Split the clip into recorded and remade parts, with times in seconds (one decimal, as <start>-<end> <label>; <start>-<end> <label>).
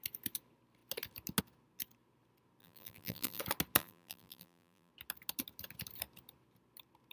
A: 0.0-2.6 recorded; 2.6-3.4 remade; 3.4-3.8 recorded; 3.8-4.9 remade; 4.9-7.1 recorded